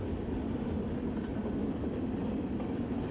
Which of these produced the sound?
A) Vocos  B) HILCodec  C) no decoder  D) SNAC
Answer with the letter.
C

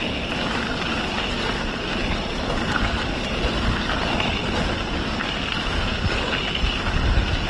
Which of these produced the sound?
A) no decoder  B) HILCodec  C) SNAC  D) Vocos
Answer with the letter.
A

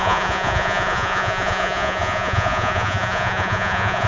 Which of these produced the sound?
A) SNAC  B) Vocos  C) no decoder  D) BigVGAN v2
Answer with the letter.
B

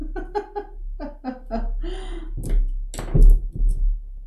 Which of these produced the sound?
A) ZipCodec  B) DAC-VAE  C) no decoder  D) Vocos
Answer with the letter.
C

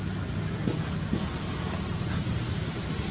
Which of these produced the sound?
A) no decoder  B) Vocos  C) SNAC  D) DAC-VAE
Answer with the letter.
A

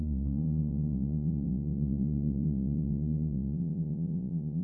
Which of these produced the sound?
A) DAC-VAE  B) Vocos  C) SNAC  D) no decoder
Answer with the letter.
B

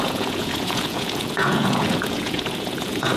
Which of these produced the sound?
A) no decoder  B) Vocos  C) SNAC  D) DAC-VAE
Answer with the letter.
B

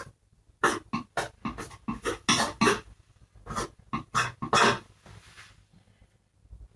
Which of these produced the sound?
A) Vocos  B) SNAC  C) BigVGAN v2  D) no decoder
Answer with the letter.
D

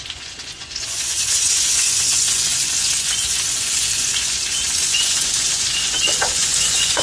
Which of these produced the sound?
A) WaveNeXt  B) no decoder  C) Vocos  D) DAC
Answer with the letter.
C